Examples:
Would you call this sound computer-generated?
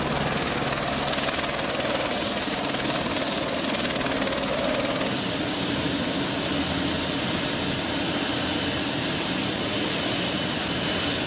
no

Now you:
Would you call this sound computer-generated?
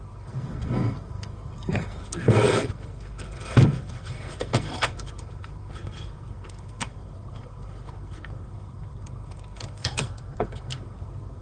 yes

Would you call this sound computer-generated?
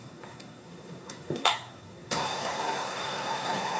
yes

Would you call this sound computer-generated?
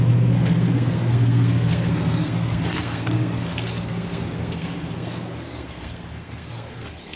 yes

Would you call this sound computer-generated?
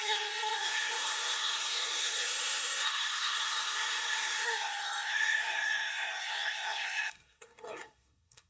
yes